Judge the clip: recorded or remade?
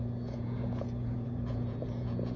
remade